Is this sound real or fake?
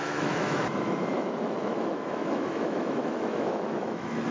fake